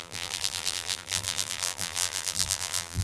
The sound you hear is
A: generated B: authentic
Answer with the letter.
A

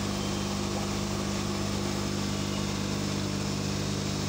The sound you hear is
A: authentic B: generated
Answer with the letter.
A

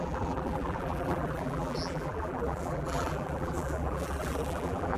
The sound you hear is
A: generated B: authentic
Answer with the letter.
A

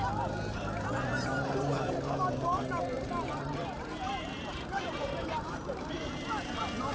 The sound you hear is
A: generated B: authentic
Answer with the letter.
A